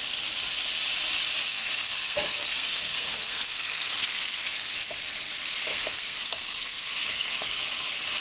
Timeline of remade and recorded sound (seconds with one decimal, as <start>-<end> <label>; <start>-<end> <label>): 0.0-1.5 recorded; 1.5-4.5 remade; 4.5-5.7 recorded; 5.7-7.6 remade; 7.6-8.2 recorded